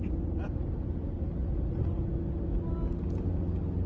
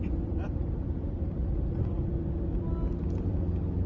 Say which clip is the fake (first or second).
second